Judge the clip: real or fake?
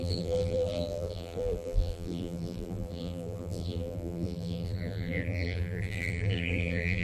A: fake